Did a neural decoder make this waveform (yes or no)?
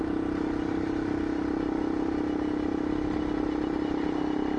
no